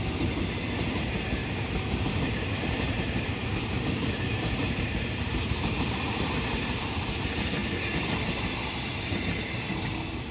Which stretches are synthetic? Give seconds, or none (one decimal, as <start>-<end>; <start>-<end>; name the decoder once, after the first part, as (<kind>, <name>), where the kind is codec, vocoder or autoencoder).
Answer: 1.4-6.3 (vocoder, BigVGAN v2)